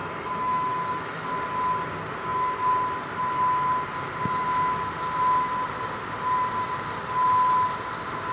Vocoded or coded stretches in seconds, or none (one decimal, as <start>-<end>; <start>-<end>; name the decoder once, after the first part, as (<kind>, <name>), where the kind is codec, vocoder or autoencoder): 0.0-1.3 (autoencoder, DAC-VAE)